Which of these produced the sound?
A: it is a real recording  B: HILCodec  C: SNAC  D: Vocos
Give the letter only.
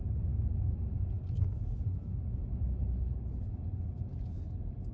A